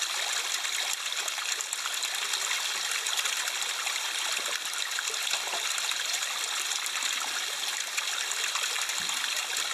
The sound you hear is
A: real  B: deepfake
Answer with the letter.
A